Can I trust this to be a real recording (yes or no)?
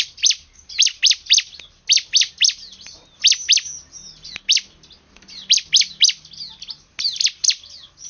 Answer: yes